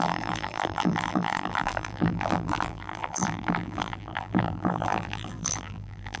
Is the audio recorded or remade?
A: remade